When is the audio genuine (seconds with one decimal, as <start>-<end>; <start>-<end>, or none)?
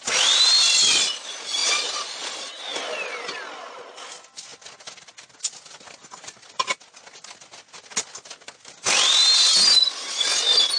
0.0-1.6; 2.3-10.8